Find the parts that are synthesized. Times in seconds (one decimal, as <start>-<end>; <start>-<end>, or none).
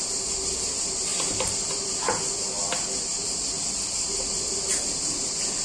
none